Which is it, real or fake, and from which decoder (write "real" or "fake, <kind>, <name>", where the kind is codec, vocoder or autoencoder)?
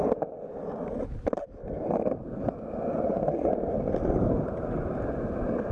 real